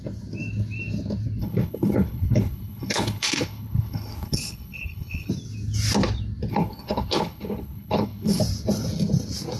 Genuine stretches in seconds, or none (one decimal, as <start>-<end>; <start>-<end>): 0.0-1.4; 5.3-6.5; 8.4-9.6